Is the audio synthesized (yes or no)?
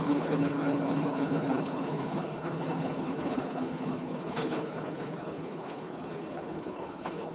yes